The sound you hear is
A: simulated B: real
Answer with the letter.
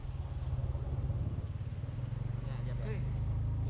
B